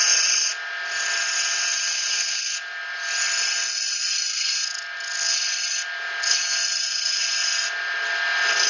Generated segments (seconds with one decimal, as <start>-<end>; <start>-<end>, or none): none